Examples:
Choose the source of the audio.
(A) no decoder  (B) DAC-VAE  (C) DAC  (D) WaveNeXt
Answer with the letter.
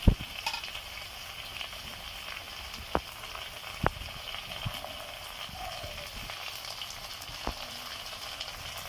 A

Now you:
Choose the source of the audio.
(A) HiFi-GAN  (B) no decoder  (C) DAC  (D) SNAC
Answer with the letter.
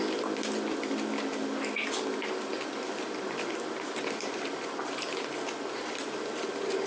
B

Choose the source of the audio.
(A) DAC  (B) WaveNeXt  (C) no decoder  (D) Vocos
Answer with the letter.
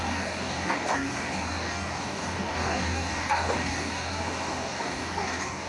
A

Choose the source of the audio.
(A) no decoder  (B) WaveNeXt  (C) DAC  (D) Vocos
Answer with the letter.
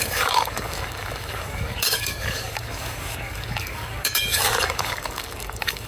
C